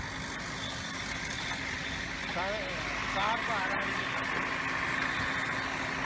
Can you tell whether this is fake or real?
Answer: real